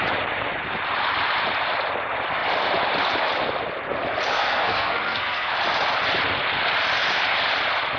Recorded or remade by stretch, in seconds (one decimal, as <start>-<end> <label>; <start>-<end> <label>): 0.0-4.3 recorded; 4.3-5.5 remade; 5.5-8.0 recorded

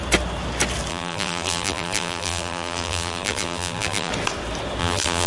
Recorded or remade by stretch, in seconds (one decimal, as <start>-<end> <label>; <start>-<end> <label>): 0.0-0.9 recorded; 0.9-4.1 remade; 4.1-4.8 recorded; 4.8-5.3 remade